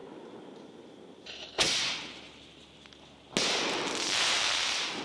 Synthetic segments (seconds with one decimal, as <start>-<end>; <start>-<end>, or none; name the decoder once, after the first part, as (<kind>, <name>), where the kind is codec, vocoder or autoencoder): none